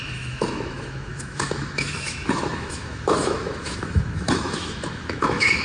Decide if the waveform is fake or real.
fake